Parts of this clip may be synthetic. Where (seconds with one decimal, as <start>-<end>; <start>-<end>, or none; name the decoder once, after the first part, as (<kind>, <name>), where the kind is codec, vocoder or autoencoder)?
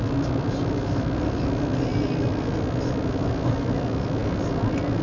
none